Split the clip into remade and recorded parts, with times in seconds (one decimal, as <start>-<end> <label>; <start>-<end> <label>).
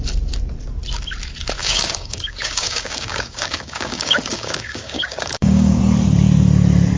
0.0-1.6 recorded; 1.6-5.8 remade; 5.8-7.0 recorded